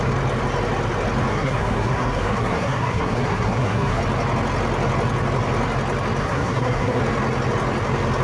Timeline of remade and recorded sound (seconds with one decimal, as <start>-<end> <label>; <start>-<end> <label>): 0.0-1.3 recorded; 1.3-4.0 remade; 4.0-6.2 recorded; 6.2-7.0 remade; 7.0-8.2 recorded